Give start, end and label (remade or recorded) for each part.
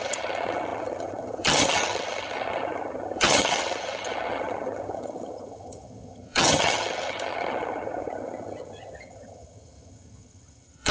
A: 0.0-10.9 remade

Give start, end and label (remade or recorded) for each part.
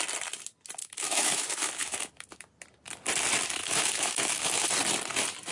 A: 0.0-0.8 recorded; 0.8-2.5 remade; 2.5-3.6 recorded; 3.6-4.7 remade; 4.7-5.5 recorded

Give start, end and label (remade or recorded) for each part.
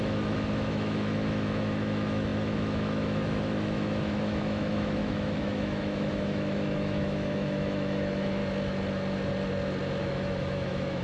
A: 0.0-8.4 remade; 8.4-10.0 recorded; 10.0-11.0 remade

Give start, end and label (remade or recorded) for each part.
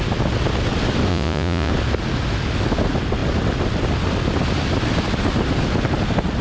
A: 0.0-1.1 recorded; 1.1-1.7 remade; 1.7-6.4 recorded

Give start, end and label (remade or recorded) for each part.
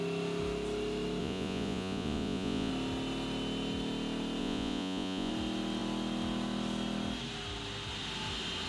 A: 0.0-1.2 recorded; 1.2-2.7 remade; 2.7-4.4 recorded; 4.4-5.3 remade; 5.3-8.7 recorded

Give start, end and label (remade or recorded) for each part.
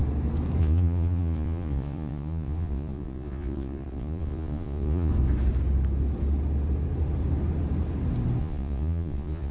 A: 0.0-0.6 recorded; 0.6-5.1 remade; 5.1-8.4 recorded; 8.4-9.5 remade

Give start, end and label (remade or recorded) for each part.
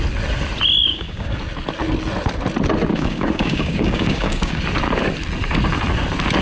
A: 0.0-0.9 recorded; 0.9-1.4 remade; 1.4-2.9 recorded; 2.9-4.6 remade; 4.6-6.4 recorded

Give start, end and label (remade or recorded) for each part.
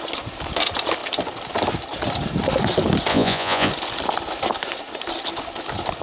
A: 0.0-3.1 recorded; 3.1-3.7 remade; 3.7-6.0 recorded